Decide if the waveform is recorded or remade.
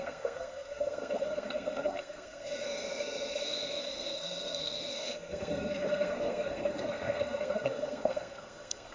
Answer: remade